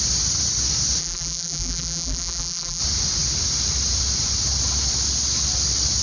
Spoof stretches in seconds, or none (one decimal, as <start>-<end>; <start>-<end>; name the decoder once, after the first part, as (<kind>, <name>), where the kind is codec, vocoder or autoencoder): 1.0-2.8 (vocoder, BigVGAN v2)